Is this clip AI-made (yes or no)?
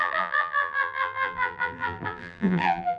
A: yes